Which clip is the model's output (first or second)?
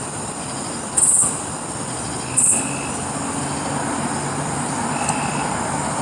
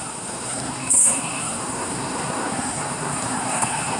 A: second